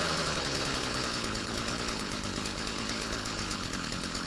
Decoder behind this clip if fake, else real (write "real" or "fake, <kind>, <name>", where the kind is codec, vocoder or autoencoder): fake, codec, HILCodec